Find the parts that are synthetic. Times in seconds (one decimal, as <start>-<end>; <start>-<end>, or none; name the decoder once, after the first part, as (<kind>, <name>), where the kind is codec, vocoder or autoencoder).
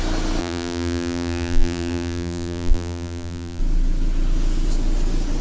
0.4-3.6 (vocoder, BigVGAN v2)